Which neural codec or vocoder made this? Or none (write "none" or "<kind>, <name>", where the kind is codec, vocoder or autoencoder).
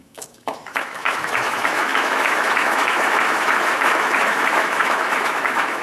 autoencoder, DAC-VAE